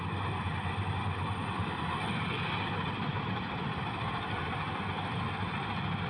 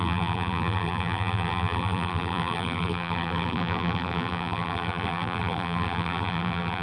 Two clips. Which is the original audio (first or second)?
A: first